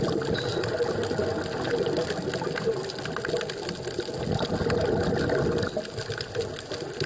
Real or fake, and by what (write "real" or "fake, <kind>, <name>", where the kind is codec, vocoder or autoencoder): real